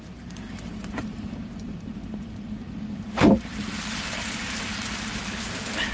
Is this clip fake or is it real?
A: fake